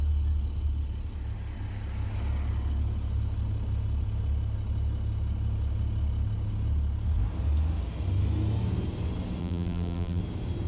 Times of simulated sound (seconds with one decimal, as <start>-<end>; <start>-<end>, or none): 9.4-10.2